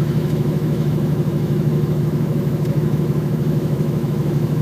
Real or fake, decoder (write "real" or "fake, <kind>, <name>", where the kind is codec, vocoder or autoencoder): fake, autoencoder, DAC-VAE